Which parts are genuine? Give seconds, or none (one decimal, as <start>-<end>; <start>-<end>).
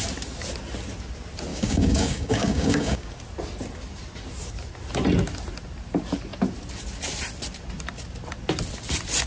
0.0-1.5; 3.1-9.3